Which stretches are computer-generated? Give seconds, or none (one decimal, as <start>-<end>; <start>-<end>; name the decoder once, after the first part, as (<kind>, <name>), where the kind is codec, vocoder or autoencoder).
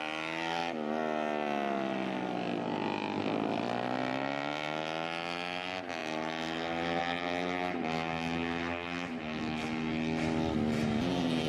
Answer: none